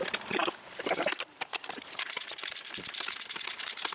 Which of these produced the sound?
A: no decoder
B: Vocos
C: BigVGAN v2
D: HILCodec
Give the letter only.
C